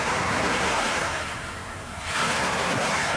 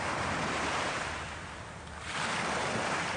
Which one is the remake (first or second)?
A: first